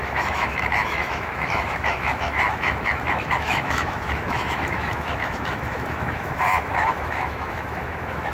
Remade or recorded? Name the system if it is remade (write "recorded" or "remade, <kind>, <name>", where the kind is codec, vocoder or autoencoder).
remade, autoencoder, DAC-VAE